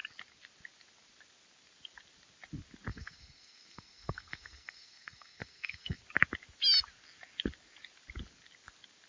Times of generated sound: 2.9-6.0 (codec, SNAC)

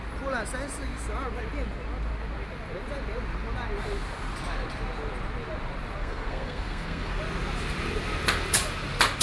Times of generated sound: 6.0-7.2 (codec, SNAC)

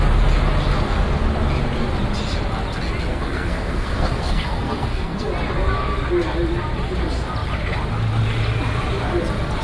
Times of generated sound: 3.1-5.3 (codec, SNAC)

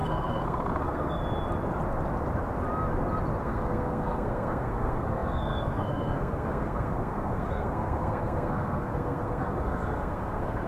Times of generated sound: 0.0-1.2 (codec, SNAC); 3.4-10.7

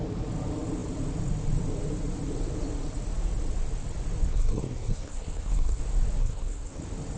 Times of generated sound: 4.3-5.8 (codec, SNAC); 6.2-6.8